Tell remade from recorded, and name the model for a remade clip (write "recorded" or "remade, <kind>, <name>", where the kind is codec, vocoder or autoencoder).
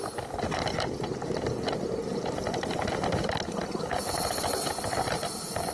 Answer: recorded